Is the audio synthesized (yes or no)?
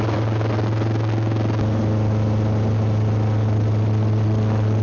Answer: no